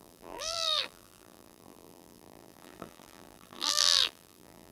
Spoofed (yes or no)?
yes